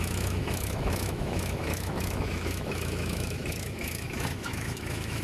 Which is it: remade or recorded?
remade